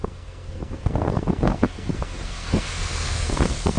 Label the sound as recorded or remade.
remade